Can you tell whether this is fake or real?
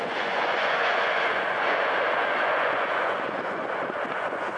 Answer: fake